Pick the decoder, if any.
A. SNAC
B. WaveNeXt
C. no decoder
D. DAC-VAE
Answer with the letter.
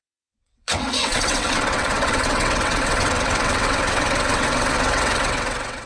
B